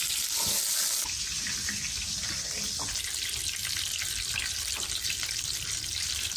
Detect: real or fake real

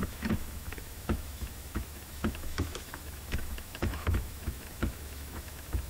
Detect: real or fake fake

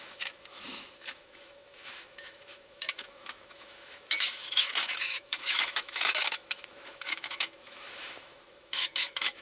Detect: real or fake fake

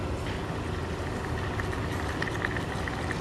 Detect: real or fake real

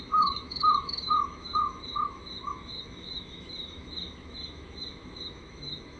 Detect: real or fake fake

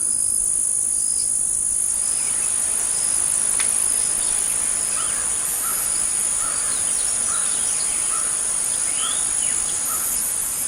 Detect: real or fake real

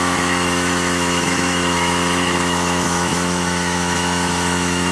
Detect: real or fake fake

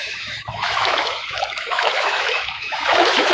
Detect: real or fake fake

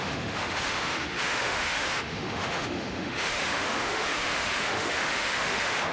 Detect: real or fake fake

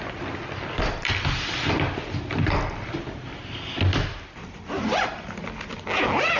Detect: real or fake real